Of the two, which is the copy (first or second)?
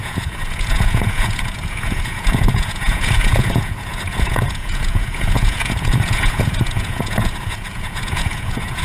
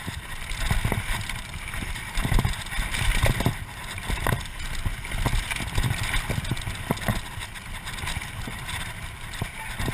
first